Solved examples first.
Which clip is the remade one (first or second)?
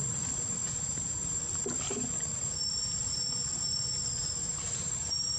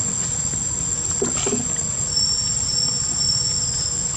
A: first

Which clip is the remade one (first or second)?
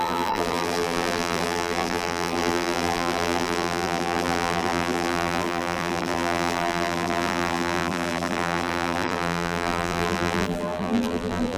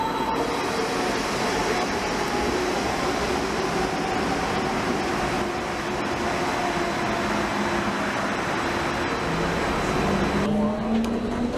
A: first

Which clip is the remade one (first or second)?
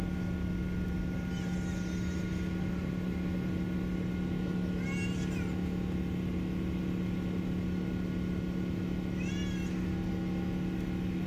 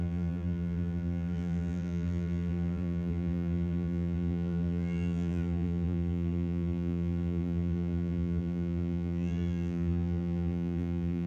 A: second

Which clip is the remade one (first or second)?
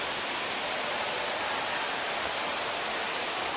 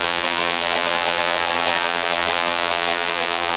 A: second